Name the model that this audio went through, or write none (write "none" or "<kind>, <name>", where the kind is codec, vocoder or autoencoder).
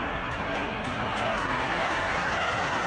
codec, SNAC